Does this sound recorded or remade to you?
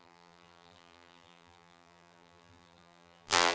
remade